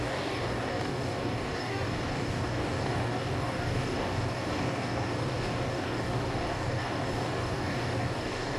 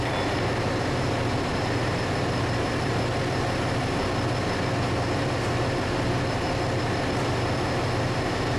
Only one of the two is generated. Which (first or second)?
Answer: first